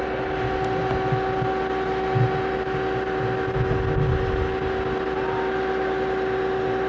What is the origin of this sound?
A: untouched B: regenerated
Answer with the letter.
A